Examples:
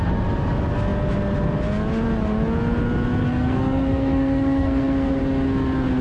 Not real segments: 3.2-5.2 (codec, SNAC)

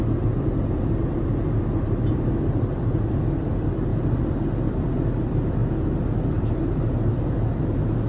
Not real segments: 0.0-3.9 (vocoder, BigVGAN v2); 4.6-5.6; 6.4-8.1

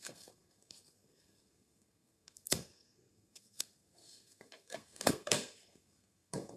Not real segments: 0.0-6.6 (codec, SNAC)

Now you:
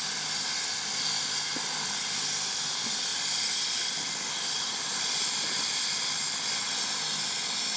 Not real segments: 3.1-6.7 (vocoder, BigVGAN v2)

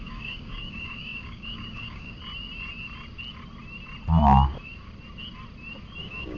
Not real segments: 0.0-2.2 (codec, DAC); 6.0-6.4

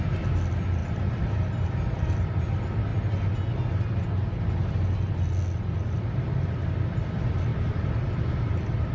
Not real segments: 0.8-2.2 (vocoder, BigVGAN v2); 7.5-8.9